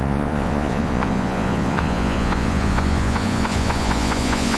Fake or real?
fake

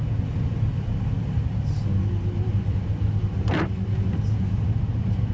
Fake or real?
real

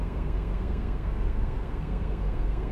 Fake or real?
fake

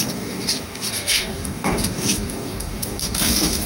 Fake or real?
fake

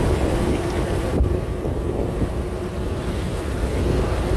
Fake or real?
real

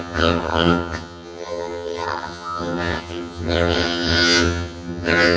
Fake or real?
fake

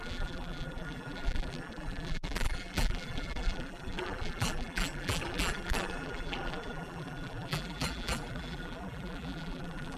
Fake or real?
fake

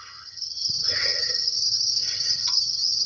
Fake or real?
fake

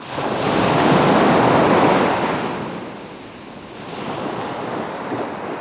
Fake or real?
real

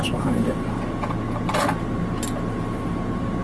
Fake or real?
fake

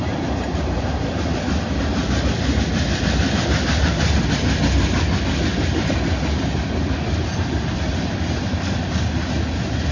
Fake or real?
real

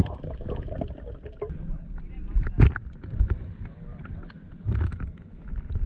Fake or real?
real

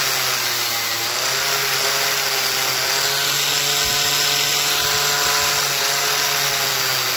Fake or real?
real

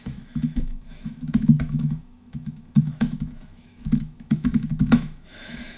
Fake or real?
fake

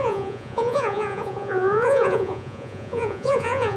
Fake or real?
fake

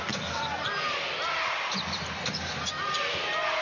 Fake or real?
real